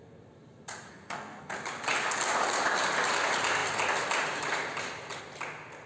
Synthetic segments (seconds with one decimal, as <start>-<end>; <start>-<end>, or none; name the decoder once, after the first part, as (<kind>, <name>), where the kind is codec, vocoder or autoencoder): 0.9-1.5 (codec, SNAC)